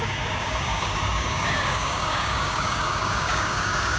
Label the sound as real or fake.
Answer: fake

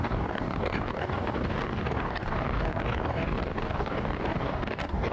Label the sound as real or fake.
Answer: fake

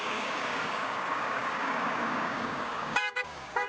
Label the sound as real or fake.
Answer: fake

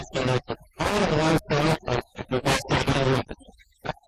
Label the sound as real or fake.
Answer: fake